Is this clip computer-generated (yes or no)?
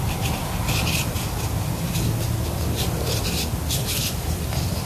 no